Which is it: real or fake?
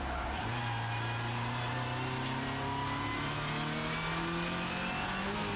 real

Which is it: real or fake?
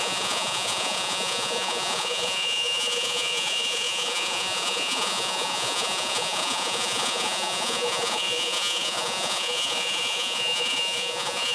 fake